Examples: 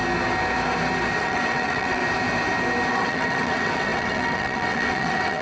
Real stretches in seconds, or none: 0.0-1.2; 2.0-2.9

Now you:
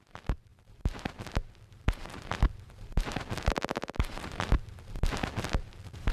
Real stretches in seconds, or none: none

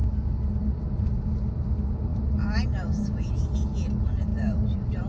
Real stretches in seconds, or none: 0.0-4.3

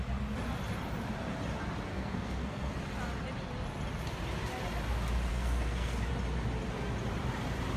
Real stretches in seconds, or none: 0.0-1.9; 2.7-5.3; 6.1-7.8

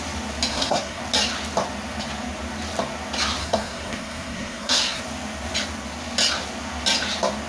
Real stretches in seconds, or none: 0.0-0.5; 1.0-3.4; 5.0-7.5

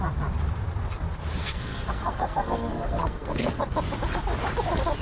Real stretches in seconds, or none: 0.0-1.4; 3.6-5.0

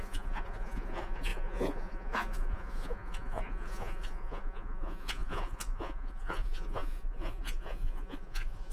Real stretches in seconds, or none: none